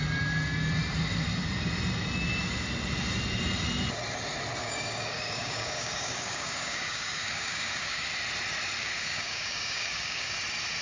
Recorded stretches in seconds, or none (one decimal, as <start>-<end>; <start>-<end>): 0.0-4.6; 8.1-8.8; 10.3-10.8

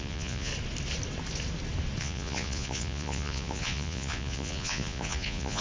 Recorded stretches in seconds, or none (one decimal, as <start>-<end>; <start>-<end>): 0.5-2.0

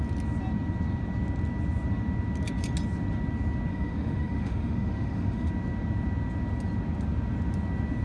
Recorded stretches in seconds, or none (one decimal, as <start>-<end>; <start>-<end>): 0.0-3.7; 5.5-8.0

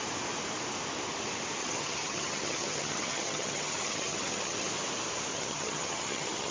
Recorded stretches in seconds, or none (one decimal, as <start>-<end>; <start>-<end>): 0.0-1.6; 4.7-5.3

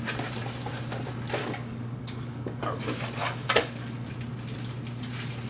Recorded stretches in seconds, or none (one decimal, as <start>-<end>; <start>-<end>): 0.0-1.4; 2.6-3.2; 4.1-5.5

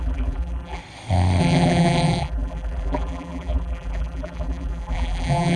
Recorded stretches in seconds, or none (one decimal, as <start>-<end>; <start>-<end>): 0.8-1.4

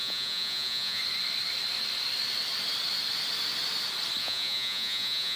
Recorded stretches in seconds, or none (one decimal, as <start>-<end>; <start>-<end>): 1.0-4.2